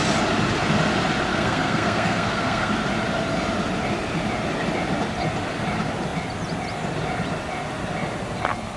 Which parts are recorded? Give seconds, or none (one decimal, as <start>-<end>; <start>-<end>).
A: 0.0-1.3; 2.7-8.8